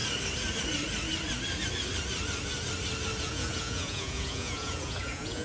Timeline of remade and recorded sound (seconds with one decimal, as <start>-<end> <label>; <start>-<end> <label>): 0.0-3.2 recorded; 3.2-5.4 remade